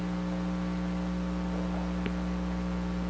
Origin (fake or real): real